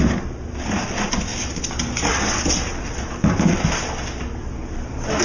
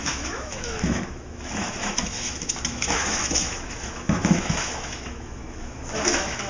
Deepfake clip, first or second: second